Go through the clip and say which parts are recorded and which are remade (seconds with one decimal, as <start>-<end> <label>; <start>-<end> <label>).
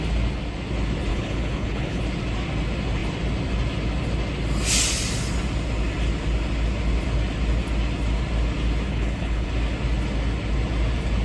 0.0-1.1 recorded; 1.1-2.0 remade; 2.0-8.9 recorded; 8.9-9.5 remade; 9.5-11.2 recorded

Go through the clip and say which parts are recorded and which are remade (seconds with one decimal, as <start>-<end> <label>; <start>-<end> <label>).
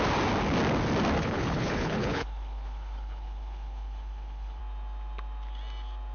0.0-1.2 recorded; 1.2-4.6 remade; 4.6-6.1 recorded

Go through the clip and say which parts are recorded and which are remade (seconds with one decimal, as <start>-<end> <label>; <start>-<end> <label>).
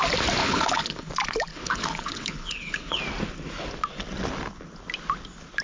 0.0-0.4 recorded; 0.4-1.1 remade; 1.1-1.5 recorded; 1.5-3.0 remade; 3.0-5.6 recorded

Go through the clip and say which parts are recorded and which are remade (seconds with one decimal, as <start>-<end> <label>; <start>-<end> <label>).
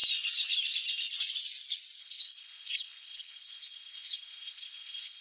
0.0-2.0 recorded; 2.0-5.2 remade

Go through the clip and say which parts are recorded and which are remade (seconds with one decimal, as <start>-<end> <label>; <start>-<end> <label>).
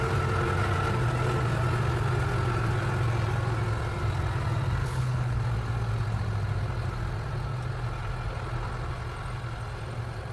0.0-4.8 recorded; 4.8-5.4 remade; 5.4-10.3 recorded